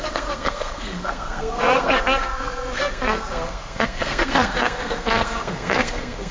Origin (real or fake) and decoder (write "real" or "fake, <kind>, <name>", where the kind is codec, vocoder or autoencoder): fake, codec, SNAC